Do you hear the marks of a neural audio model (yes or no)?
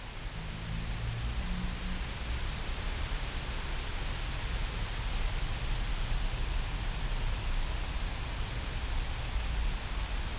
no